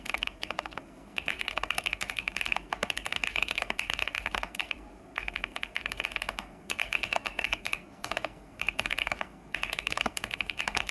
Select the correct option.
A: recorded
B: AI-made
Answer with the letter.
B